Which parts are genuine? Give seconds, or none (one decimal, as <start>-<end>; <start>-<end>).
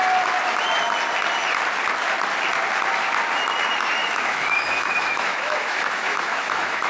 0.0-4.0